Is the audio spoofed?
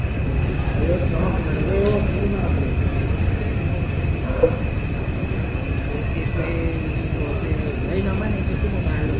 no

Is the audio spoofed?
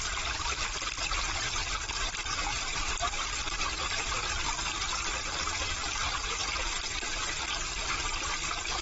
yes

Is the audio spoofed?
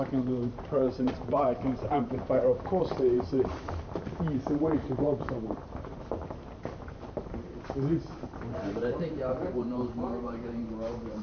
yes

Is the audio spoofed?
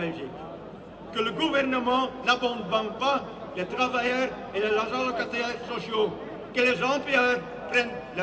no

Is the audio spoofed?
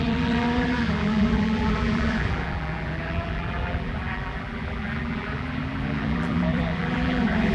yes